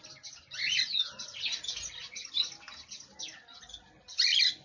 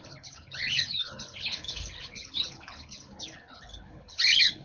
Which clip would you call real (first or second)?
first